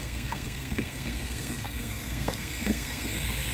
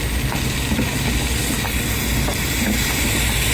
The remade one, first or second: first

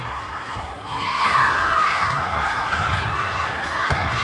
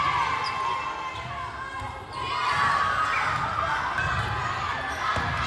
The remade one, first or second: first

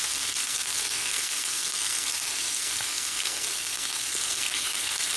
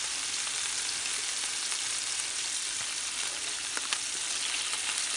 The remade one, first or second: first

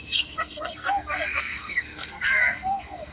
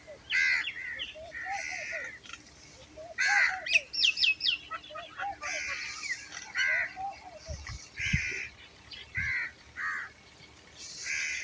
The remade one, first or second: first